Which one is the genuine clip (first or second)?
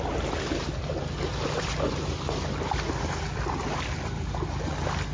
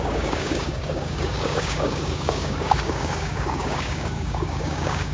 first